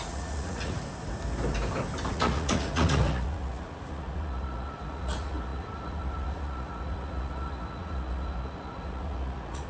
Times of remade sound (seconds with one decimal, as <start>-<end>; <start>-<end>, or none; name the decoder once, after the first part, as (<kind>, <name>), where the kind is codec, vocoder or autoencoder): 0.0-0.8 (vocoder, Vocos); 2.1-9.7